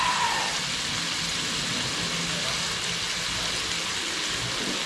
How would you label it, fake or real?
real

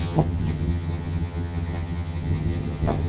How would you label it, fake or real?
fake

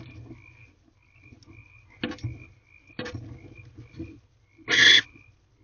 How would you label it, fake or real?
real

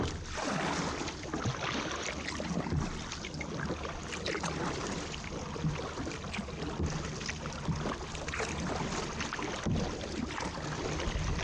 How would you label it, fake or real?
real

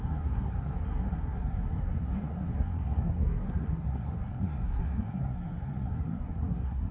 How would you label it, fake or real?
fake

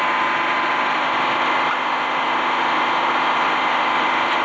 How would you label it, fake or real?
real